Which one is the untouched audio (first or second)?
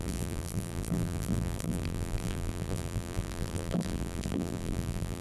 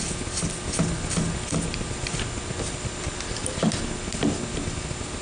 second